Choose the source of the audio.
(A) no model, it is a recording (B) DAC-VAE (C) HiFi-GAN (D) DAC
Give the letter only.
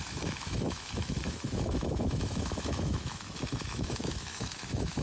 B